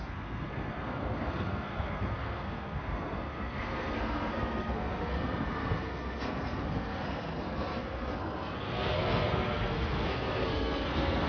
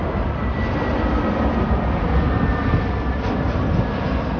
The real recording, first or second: second